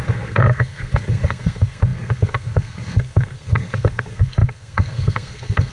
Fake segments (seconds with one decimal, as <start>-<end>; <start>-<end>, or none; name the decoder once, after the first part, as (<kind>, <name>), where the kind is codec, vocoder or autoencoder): 0.0-5.7 (codec, SNAC)